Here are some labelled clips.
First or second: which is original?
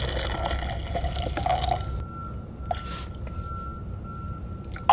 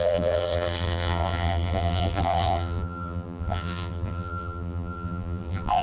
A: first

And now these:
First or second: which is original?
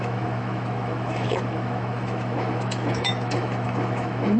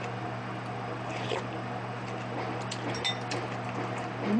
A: second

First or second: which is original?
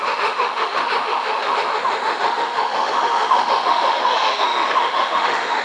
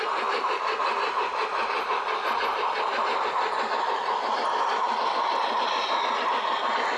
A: second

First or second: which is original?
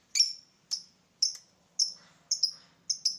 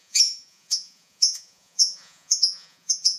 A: first